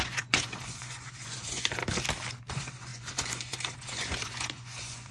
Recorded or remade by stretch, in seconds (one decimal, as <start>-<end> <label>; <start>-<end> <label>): 0.0-1.8 remade; 1.8-2.5 recorded; 2.5-5.1 remade